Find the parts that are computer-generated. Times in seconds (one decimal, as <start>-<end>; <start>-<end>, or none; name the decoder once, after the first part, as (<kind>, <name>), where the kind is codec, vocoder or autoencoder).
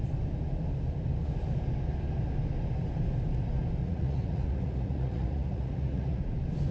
3.8-6.2 (vocoder, Vocos)